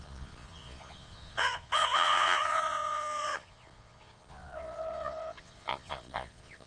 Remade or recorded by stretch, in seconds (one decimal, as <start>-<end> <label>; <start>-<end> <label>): 0.0-6.7 remade